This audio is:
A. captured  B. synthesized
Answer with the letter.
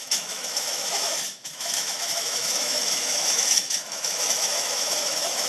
B